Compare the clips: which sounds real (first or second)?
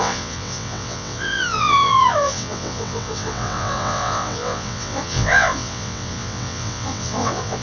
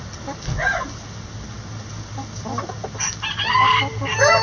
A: second